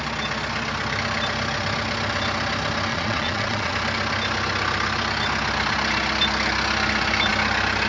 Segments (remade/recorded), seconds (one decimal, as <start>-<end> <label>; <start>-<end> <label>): 0.0-2.9 recorded; 2.9-3.7 remade; 3.7-7.9 recorded